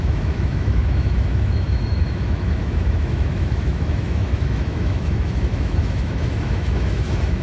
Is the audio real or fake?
fake